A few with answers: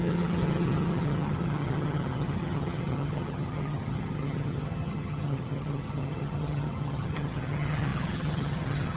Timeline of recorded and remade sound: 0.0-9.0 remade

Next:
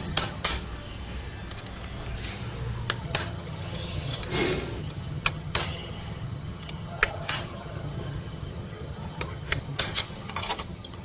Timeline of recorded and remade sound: 0.0-0.5 remade; 0.5-3.0 recorded; 3.0-4.2 remade; 4.2-4.8 recorded; 4.8-11.0 remade